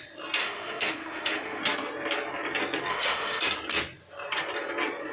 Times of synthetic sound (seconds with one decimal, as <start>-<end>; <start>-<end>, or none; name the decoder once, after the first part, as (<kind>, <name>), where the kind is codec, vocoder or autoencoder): 0.4-1.6 (autoencoder, DAC-VAE); 2.9-3.4